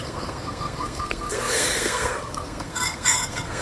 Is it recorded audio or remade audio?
remade